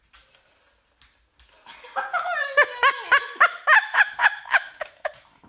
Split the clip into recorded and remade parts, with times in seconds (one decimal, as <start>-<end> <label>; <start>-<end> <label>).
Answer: 0.0-2.1 recorded; 2.1-5.5 remade